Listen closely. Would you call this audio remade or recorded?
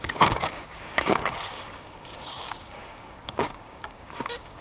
remade